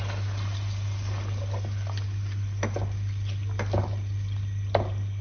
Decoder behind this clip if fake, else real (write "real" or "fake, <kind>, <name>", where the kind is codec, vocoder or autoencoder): real